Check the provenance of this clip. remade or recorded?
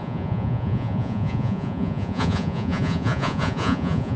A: remade